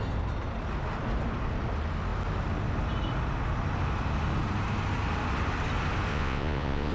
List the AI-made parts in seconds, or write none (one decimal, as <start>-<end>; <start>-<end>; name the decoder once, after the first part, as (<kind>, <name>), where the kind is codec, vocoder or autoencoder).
6.1-6.9 (vocoder, Vocos)